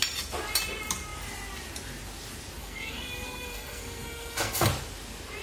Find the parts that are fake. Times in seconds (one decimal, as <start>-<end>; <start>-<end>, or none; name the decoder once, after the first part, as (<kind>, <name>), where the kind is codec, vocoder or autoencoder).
2.6-4.7 (codec, SNAC)